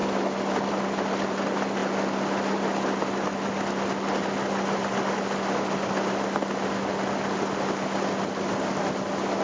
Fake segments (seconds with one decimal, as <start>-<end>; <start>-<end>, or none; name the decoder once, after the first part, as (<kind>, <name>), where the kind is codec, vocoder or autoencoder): none